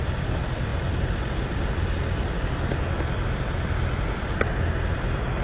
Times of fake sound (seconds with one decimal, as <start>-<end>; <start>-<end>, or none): none